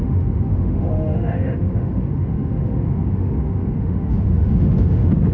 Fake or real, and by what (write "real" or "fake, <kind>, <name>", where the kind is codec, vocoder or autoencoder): fake, autoencoder, DAC-VAE